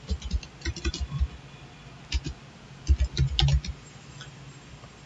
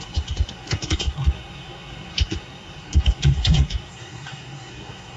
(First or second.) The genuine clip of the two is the first